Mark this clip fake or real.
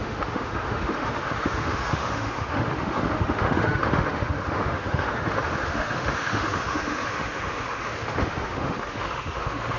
fake